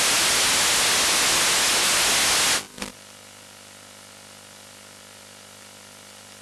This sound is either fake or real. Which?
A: real